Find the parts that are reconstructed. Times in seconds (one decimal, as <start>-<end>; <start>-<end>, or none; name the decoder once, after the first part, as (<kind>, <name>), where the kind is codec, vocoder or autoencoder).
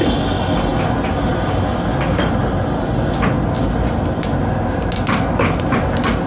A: none